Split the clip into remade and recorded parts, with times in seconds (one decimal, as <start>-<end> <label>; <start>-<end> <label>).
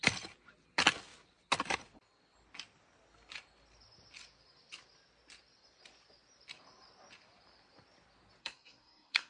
0.0-8.4 recorded; 8.4-9.3 remade